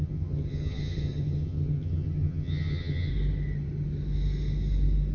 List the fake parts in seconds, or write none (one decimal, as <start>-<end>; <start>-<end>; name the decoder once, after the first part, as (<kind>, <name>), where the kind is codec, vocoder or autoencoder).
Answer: 0.0-3.1 (vocoder, HiFi-GAN)